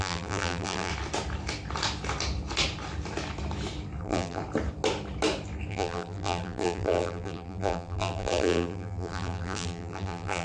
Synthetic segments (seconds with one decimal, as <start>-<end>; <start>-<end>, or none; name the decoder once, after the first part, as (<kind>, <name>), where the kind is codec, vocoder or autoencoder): 0.0-0.9 (vocoder, BigVGAN v2); 4.0-4.4; 5.7-10.4